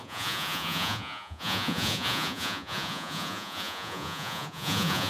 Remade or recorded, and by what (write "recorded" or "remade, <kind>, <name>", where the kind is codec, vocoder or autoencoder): remade, vocoder, Vocos